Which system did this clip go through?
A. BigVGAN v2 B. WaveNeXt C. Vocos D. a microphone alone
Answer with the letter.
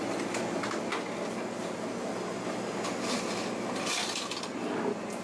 D